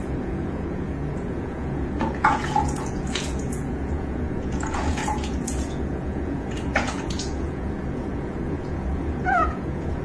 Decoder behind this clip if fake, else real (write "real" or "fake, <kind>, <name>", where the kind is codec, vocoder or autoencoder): fake, vocoder, Vocos